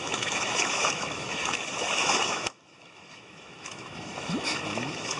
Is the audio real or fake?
fake